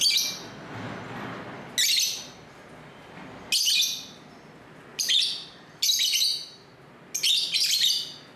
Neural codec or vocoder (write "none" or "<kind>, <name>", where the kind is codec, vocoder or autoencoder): none